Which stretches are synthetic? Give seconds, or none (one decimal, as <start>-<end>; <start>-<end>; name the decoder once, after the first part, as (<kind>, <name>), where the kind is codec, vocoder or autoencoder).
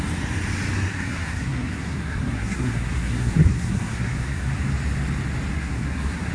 0.9-4.5 (codec, SNAC); 5.5-6.3